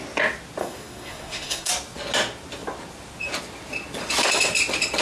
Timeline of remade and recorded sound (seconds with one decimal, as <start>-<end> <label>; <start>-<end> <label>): 0.0-0.6 recorded; 0.6-1.7 remade; 1.7-5.0 recorded